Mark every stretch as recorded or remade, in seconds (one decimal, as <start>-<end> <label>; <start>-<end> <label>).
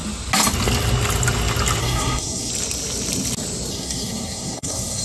0.0-1.8 recorded; 1.8-2.5 remade; 2.5-3.7 recorded; 3.7-5.0 remade